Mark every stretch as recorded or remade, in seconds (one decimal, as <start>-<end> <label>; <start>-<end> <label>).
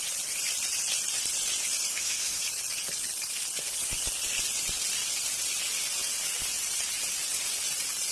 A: 0.0-1.9 recorded; 1.9-2.4 remade; 2.4-8.1 recorded